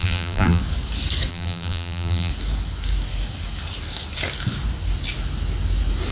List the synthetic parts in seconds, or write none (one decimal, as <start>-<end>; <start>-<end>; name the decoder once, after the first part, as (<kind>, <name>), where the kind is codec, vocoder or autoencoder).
0.0-0.6 (vocoder, BigVGAN v2); 1.3-2.3